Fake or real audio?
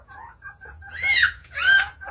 fake